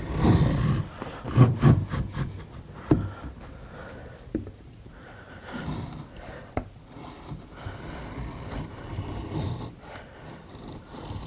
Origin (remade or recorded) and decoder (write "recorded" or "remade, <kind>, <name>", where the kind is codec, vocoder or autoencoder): recorded